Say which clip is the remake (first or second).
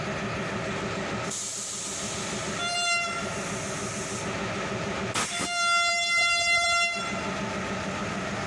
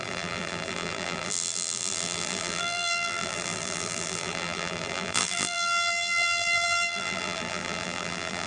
second